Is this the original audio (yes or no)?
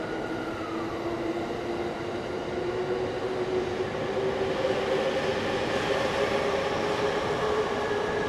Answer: yes